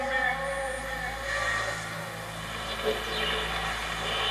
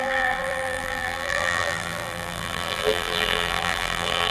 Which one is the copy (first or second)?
second